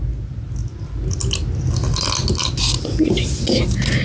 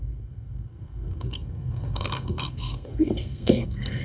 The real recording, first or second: first